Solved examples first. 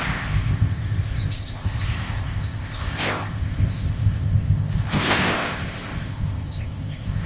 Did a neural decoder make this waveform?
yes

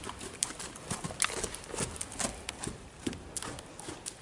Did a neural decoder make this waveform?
no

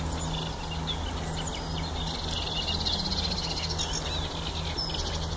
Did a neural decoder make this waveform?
no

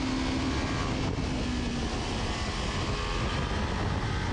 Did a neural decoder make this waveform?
no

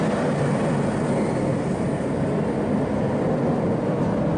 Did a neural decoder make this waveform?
no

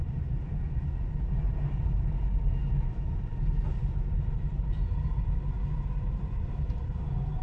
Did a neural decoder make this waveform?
no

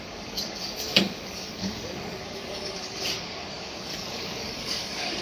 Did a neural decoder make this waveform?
yes